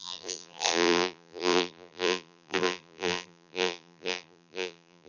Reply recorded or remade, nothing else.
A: remade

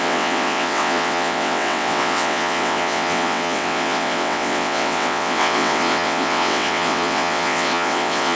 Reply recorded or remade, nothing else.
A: remade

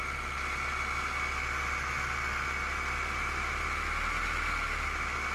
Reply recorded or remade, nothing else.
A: recorded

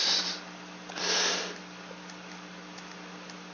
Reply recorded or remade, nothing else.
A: recorded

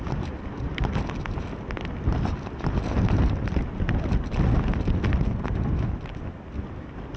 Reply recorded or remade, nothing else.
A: recorded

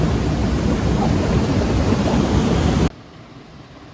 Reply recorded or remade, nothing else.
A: recorded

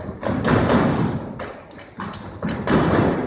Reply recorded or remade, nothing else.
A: recorded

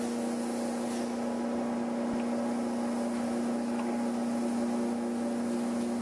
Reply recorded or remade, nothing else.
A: recorded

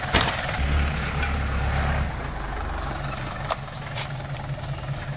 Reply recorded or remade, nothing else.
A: remade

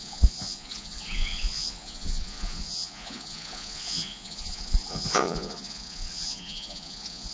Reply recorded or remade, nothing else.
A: remade